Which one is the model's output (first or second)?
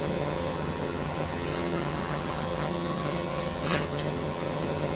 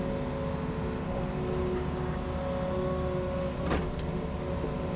first